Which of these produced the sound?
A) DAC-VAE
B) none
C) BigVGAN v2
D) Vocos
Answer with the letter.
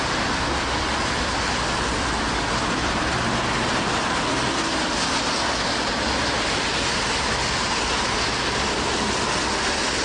B